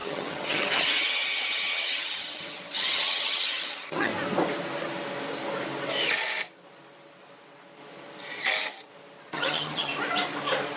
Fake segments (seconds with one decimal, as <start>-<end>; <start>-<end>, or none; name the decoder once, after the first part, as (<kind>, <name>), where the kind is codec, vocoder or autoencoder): 0.0-4.1 (vocoder, HiFi-GAN); 9.3-9.9